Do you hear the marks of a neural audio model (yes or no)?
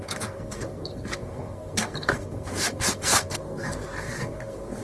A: yes